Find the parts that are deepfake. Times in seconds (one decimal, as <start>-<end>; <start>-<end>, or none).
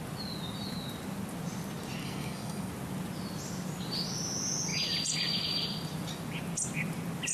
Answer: 2.0-2.7